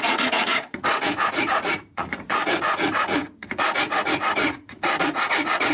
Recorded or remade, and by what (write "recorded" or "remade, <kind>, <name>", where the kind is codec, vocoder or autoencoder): remade, vocoder, Vocos